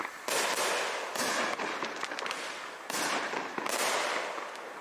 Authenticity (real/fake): real